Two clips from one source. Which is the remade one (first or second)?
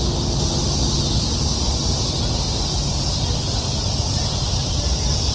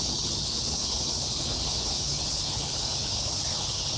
second